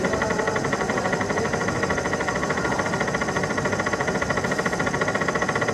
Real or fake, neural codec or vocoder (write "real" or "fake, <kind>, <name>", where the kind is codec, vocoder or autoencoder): fake, vocoder, BigVGAN v2